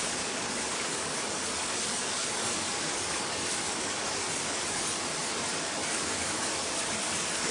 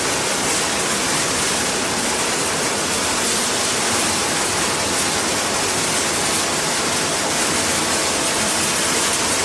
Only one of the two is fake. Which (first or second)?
first